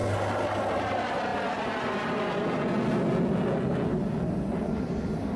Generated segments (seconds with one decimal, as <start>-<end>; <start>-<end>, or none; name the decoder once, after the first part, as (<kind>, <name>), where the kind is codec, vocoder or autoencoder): none